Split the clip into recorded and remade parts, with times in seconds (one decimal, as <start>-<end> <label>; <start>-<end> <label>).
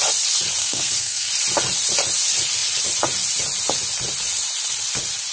0.0-0.6 recorded; 0.6-1.3 remade; 1.3-5.3 recorded